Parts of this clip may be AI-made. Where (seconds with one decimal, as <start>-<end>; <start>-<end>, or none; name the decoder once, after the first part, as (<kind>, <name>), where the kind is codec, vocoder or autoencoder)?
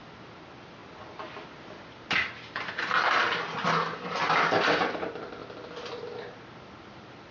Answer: none